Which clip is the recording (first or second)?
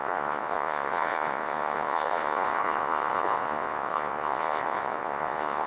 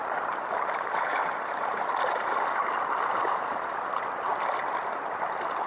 second